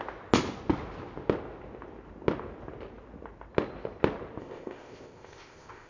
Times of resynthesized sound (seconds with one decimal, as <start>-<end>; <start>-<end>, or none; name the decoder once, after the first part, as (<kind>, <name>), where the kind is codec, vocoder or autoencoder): 4.4-5.9 (codec, ZipCodec)